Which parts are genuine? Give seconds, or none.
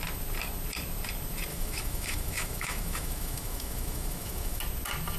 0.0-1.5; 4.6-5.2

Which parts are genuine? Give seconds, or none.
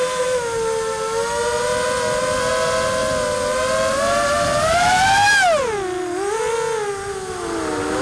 0.0-8.0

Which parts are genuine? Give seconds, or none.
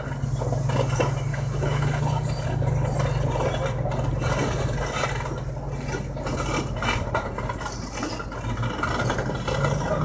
0.0-1.3; 2.0-10.0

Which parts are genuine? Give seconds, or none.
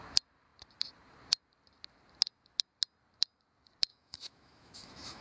0.0-3.9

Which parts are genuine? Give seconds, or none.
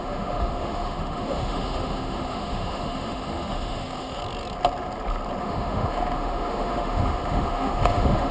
4.2-5.4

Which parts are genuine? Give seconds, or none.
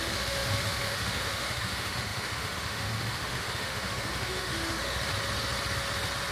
5.1-6.3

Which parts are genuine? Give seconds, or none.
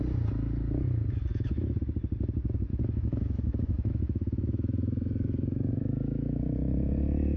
0.0-1.3; 1.8-2.7; 6.4-7.4